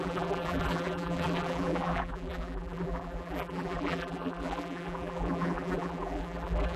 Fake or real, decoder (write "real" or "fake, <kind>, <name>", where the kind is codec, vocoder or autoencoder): fake, vocoder, BigVGAN v2